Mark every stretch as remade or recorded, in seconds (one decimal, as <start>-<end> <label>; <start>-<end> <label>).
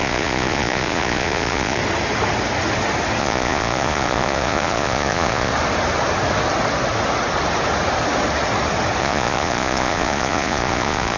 0.0-1.8 remade; 1.8-3.2 recorded; 3.2-5.5 remade; 5.5-9.0 recorded; 9.0-11.2 remade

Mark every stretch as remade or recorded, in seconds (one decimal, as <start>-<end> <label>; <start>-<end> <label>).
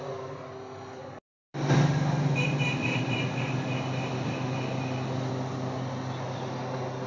0.0-1.0 recorded; 1.0-5.3 remade; 5.3-7.1 recorded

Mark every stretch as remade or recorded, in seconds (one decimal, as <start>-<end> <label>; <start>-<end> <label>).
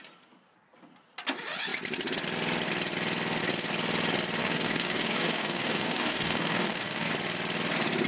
0.0-4.4 recorded; 4.4-7.1 remade; 7.1-8.1 recorded